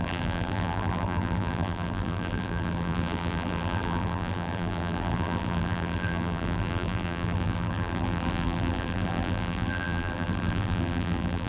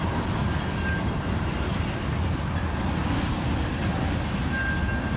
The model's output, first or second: first